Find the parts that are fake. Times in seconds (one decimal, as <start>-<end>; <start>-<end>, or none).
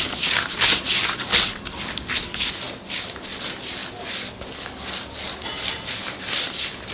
none